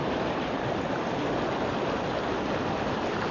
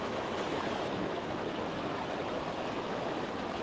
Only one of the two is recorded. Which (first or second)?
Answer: first